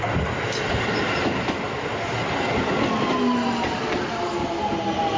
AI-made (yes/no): no